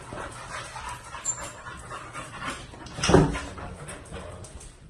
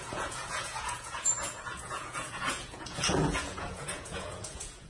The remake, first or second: second